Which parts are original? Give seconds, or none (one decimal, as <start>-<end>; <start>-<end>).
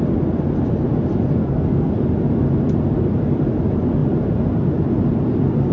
0.0-1.4; 1.9-5.7